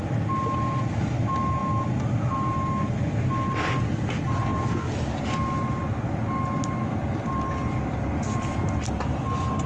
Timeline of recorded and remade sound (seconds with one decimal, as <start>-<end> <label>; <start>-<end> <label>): 0.0-9.7 recorded